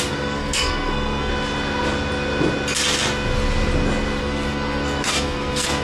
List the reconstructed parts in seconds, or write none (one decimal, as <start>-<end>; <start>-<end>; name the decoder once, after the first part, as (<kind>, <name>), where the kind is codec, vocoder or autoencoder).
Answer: 0.0-1.3 (codec, SNAC); 4.2-5.8